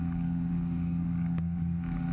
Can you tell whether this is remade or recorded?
remade